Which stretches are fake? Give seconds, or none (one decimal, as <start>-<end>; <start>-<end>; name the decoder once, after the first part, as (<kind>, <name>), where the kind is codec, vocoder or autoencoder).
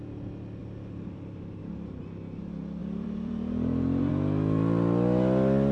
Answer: 0.6-1.6 (vocoder, BigVGAN v2); 2.8-4.1